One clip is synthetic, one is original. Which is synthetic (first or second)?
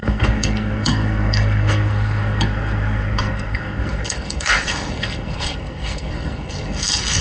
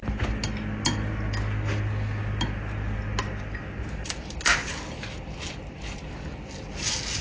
first